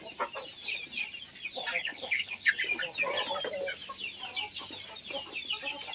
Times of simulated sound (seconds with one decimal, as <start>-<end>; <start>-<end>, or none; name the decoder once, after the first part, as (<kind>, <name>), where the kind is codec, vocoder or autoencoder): 1.8-2.5 (codec, HILCodec)